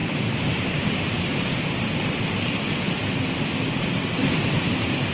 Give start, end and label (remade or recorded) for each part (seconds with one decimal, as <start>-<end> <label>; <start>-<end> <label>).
0.0-1.9 remade; 1.9-4.2 recorded; 4.2-5.1 remade